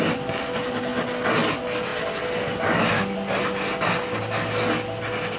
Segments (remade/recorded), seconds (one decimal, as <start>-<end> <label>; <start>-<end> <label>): 0.0-5.4 recorded